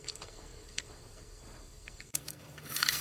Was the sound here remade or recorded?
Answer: remade